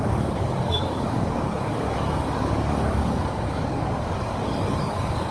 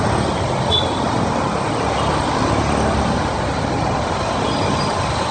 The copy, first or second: first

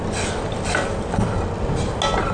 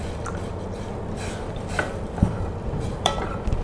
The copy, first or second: second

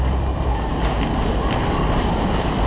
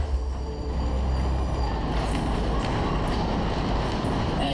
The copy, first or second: first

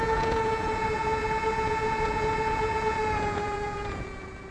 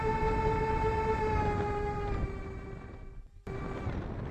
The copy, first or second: first